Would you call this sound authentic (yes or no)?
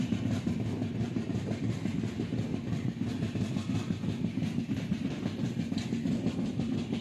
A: yes